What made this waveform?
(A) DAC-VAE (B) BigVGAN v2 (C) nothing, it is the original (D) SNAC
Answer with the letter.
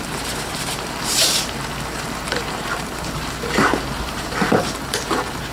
B